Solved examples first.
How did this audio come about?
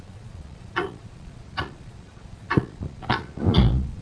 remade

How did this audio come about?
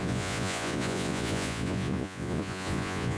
remade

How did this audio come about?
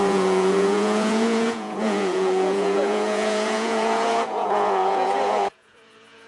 remade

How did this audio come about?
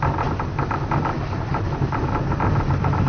recorded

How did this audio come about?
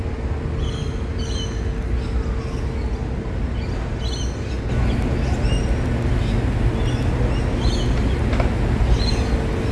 recorded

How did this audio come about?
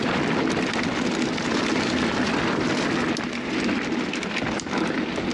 recorded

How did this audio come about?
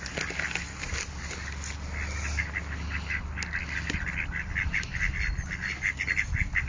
recorded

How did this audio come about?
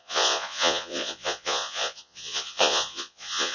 remade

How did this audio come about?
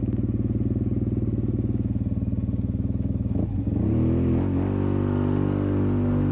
recorded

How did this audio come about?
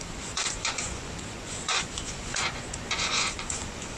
remade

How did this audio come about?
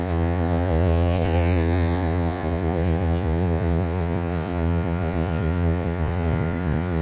remade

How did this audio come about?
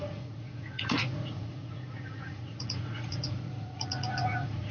remade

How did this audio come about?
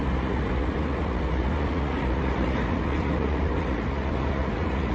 remade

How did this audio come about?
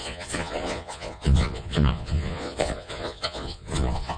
remade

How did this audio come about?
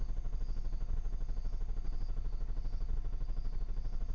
recorded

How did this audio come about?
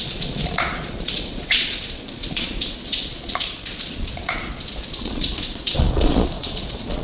remade